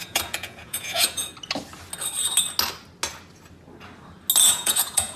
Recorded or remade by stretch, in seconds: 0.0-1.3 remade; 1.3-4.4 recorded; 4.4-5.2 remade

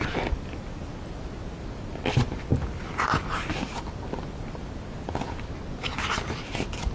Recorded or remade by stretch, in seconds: 0.0-6.9 recorded